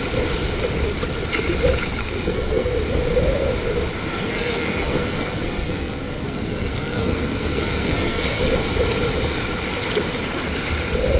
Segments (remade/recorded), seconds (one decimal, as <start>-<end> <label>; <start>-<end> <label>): 0.0-2.0 recorded; 2.0-2.7 remade; 2.7-4.1 recorded; 4.1-8.4 remade; 8.4-11.2 recorded